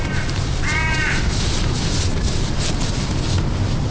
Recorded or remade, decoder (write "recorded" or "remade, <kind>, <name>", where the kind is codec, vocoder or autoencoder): recorded